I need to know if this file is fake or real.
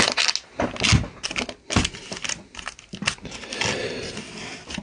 real